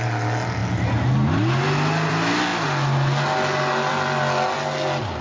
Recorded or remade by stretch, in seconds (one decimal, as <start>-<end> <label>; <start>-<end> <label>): 0.0-5.2 recorded